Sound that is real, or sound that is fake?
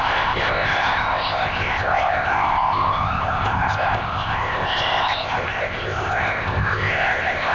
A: fake